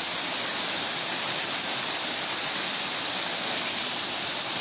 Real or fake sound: real